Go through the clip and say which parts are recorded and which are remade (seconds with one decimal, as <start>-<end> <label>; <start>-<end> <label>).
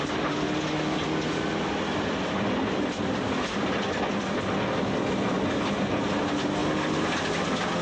0.0-7.8 recorded